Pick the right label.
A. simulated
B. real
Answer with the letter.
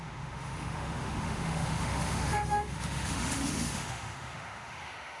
A